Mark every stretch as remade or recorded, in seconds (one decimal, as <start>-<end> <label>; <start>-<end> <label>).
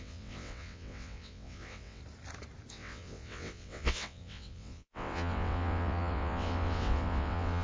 0.0-2.0 remade; 2.0-2.7 recorded; 2.7-7.6 remade